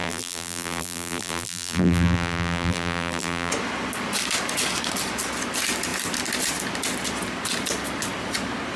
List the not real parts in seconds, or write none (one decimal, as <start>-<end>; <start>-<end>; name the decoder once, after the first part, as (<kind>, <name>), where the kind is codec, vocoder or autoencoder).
0.0-3.5 (vocoder, BigVGAN v2)